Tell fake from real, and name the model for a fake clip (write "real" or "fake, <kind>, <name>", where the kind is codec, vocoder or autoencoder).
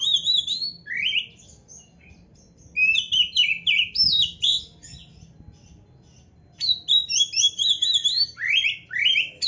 real